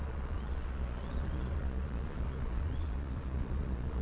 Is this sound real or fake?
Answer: fake